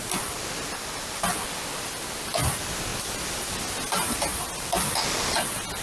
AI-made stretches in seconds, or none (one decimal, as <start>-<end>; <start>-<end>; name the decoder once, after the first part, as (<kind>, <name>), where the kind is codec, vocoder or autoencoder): none